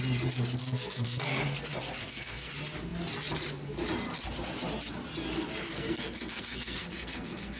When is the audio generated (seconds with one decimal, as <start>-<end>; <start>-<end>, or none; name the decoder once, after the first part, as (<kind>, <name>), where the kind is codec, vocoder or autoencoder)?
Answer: 0.6-1.4 (codec, SNAC); 2.0-2.5; 5.7-7.6